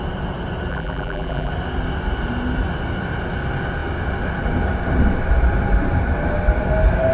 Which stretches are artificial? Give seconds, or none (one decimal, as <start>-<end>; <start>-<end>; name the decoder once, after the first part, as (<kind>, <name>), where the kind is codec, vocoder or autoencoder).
0.7-1.5 (vocoder, BigVGAN v2)